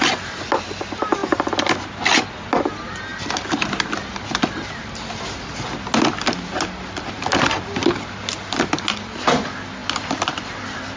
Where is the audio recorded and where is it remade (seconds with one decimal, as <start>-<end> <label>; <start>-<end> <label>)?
0.0-11.0 recorded